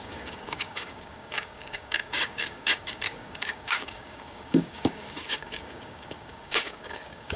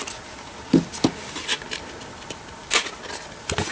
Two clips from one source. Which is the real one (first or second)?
second